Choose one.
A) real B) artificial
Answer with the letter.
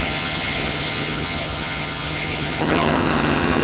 B